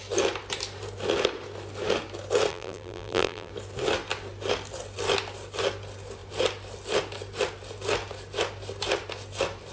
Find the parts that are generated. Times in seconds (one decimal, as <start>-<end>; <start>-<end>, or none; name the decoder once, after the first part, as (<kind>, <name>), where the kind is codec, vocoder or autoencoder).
2.5-3.5 (vocoder, BigVGAN v2)